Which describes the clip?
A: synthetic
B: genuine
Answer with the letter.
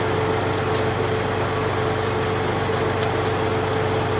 B